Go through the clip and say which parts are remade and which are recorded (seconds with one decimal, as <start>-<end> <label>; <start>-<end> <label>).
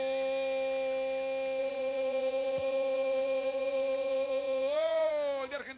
0.0-1.6 recorded; 1.6-5.1 remade; 5.1-5.8 recorded